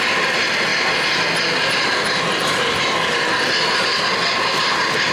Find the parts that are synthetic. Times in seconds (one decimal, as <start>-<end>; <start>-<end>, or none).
none